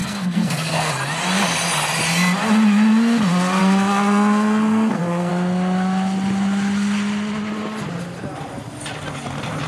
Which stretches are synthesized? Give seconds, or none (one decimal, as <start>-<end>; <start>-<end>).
0.0-0.9; 3.6-5.3